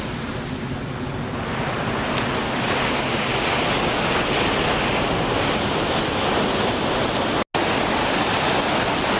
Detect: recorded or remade recorded